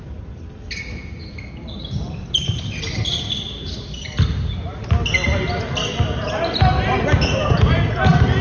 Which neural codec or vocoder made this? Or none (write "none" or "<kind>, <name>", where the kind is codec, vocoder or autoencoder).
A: none